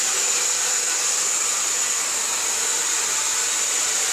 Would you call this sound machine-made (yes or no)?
no